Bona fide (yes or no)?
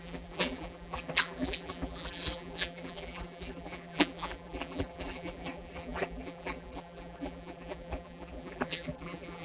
no